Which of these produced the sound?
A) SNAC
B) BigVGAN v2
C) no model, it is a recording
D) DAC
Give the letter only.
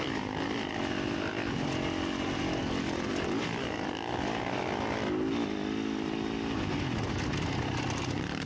C